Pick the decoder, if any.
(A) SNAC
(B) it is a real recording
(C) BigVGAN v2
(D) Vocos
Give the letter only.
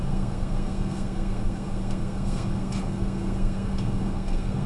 A